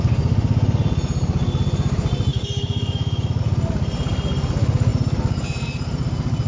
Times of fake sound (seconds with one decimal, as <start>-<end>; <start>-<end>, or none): 2.3-3.4